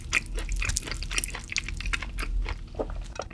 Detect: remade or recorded recorded